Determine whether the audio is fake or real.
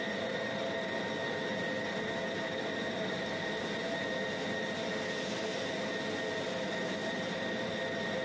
real